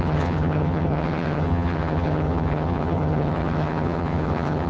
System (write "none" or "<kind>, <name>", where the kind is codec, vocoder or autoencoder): vocoder, HiFi-GAN